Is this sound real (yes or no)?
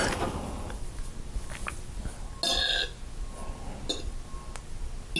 yes